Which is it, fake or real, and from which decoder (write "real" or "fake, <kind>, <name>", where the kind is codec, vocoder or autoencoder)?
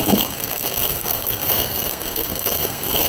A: fake, codec, SNAC